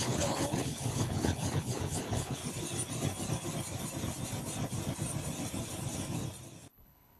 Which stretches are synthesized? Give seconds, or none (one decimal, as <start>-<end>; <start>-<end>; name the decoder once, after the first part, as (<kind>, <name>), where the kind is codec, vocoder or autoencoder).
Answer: 0.0-2.4 (codec, HILCodec); 6.7-7.2